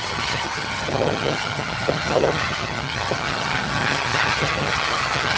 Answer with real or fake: fake